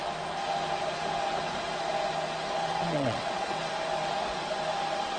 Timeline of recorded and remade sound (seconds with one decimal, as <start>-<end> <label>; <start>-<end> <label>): 0.0-2.6 recorded; 2.6-3.7 remade; 3.7-5.2 recorded